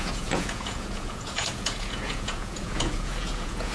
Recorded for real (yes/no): no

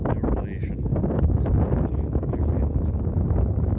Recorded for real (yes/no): yes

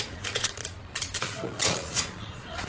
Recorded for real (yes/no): no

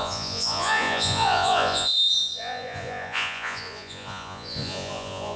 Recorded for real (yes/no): no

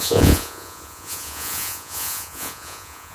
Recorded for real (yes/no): no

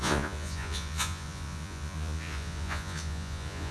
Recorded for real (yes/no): no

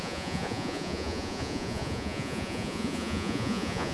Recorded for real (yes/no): no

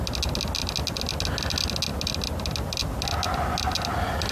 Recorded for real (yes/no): yes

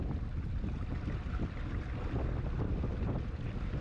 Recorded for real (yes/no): yes